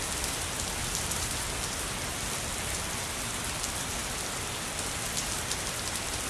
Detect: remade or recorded recorded